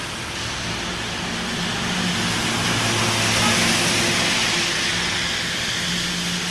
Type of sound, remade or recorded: recorded